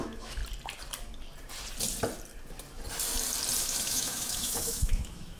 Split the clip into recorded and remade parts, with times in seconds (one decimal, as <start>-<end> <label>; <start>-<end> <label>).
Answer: 0.0-0.4 remade; 0.4-3.6 recorded; 3.6-5.4 remade